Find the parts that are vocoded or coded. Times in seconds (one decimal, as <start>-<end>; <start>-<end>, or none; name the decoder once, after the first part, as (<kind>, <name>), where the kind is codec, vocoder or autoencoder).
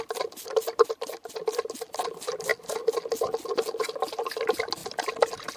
none